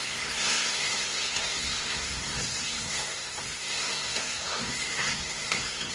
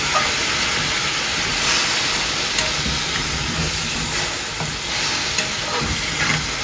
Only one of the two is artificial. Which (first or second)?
first